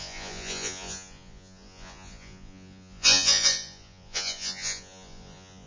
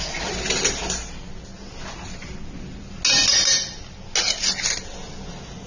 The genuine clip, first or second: second